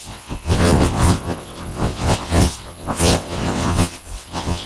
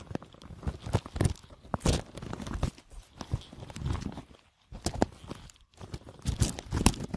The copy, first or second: first